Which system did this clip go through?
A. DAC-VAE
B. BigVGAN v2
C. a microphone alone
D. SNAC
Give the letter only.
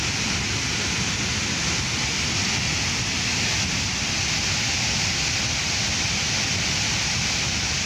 C